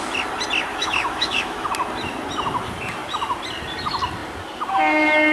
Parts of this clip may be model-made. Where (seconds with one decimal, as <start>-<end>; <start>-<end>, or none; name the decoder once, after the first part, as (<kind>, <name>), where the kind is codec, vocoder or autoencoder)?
0.7-1.7 (autoencoder, DAC-VAE)